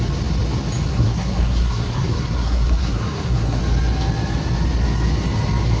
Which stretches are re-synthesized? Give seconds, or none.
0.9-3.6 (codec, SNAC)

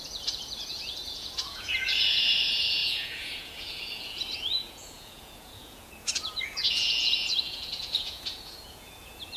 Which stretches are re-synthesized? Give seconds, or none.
0.0-9.4 (vocoder, Vocos)